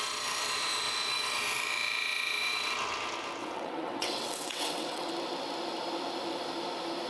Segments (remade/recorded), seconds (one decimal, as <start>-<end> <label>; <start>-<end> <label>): 0.0-3.4 recorded; 3.4-5.1 remade; 5.1-7.1 recorded